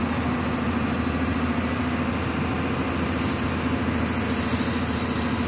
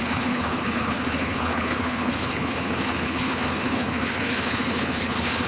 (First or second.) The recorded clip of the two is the first